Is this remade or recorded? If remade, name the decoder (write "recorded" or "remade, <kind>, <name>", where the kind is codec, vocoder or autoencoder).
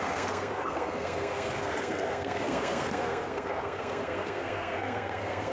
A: remade, codec, SNAC